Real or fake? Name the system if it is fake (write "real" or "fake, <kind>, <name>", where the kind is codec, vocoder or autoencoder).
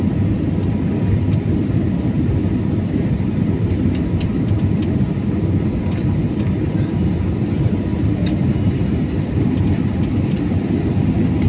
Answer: real